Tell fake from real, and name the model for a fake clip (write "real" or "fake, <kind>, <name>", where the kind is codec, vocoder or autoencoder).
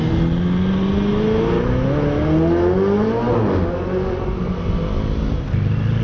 real